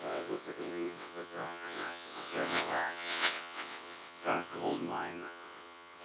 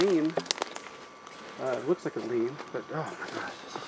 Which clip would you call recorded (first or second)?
second